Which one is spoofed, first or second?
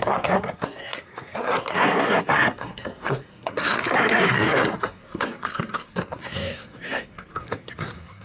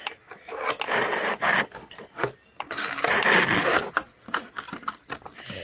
first